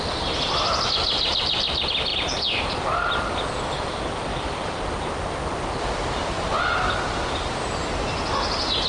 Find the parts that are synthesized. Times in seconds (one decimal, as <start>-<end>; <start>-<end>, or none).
4.3-4.8